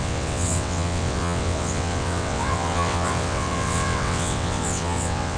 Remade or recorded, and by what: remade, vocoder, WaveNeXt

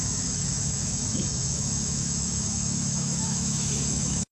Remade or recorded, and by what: remade, autoencoder, DAC-VAE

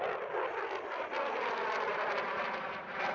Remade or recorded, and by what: remade, vocoder, BigVGAN v2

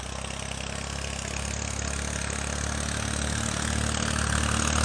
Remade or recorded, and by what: recorded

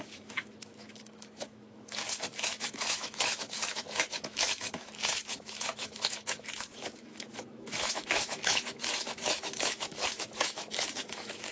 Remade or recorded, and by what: remade, autoencoder, DAC-VAE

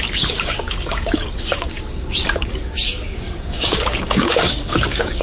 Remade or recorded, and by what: remade, codec, DAC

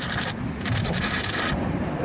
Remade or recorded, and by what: recorded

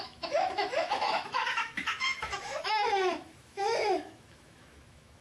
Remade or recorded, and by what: remade, autoencoder, DAC-VAE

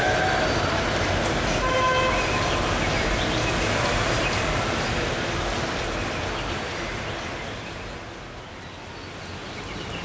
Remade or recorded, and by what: recorded